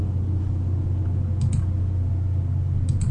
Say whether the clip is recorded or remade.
recorded